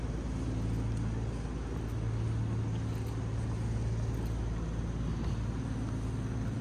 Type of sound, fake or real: real